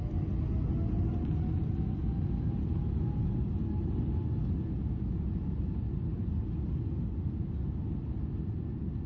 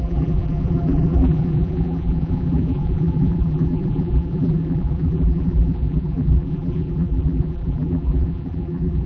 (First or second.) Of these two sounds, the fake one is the second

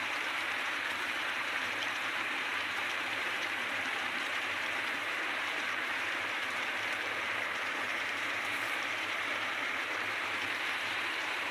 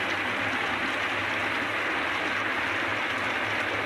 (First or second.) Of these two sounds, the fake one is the first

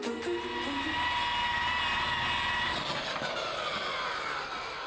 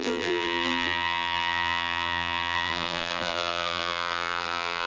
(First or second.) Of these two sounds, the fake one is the second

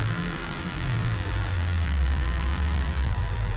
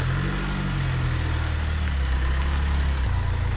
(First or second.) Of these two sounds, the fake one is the first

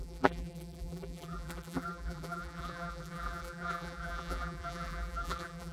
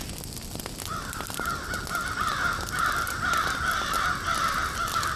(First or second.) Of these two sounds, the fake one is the first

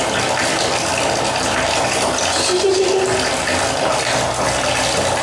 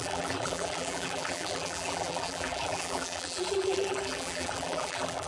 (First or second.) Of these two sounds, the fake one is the second